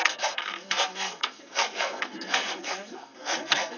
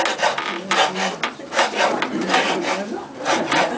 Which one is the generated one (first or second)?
first